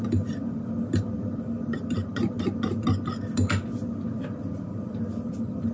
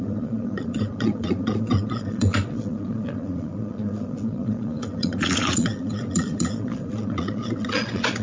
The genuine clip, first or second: first